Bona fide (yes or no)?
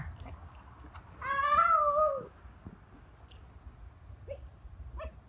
yes